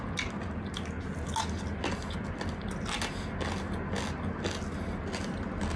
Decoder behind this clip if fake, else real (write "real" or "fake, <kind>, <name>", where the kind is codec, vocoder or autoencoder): real